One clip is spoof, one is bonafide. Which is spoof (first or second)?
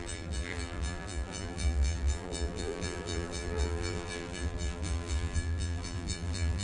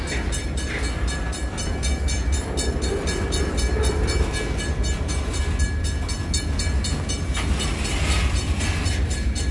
first